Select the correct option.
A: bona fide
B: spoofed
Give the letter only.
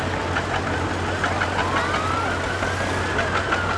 A